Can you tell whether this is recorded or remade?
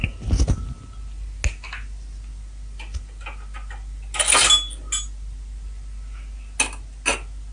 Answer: recorded